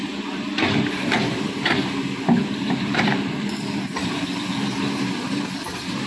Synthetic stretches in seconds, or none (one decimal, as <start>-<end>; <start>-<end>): 0.0-1.5; 2.4-5.5